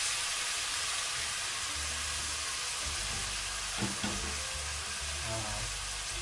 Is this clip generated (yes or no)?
no